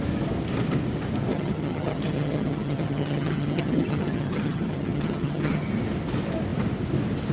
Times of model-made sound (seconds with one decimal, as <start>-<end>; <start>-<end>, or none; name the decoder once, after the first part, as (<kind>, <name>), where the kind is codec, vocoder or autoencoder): 1.3-5.7 (vocoder, HiFi-GAN)

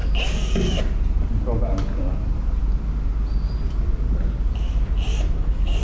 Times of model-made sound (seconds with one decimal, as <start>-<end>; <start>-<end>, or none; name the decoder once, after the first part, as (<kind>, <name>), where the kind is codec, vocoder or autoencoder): 0.0-0.8 (codec, DAC); 5.1-5.8

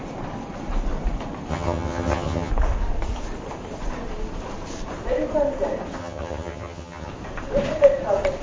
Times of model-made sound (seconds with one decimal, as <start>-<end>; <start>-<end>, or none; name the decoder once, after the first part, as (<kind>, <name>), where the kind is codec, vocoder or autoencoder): 1.5-2.5 (vocoder, HiFi-GAN); 6.0-7.1

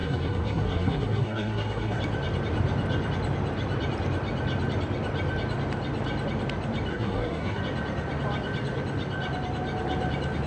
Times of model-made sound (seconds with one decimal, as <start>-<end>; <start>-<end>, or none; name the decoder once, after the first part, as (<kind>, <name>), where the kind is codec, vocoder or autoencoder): 0.0-2.0 (codec, SNAC); 6.9-7.6